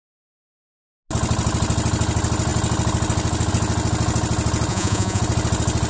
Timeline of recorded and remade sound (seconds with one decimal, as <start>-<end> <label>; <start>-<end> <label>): 0.0-4.7 recorded; 4.7-5.2 remade; 5.2-5.9 recorded